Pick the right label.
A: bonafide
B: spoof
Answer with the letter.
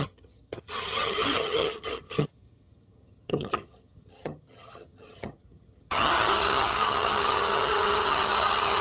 B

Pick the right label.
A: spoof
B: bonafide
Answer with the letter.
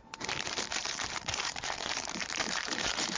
A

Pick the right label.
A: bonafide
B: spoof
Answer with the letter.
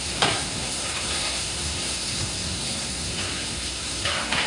B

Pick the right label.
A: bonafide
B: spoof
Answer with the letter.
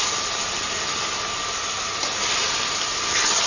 A